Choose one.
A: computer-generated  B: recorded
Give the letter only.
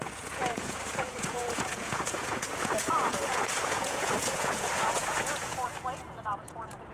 A